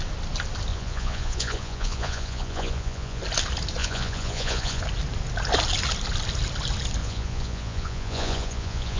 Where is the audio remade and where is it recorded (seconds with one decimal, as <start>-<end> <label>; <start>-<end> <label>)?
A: 0.0-0.7 recorded; 0.7-3.2 remade; 3.2-3.8 recorded; 3.8-4.8 remade; 4.8-7.0 recorded; 7.0-9.0 remade